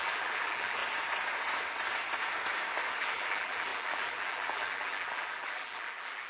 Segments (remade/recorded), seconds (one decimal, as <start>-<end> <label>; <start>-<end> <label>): 0.0-0.8 remade; 0.8-3.0 recorded; 3.0-6.3 remade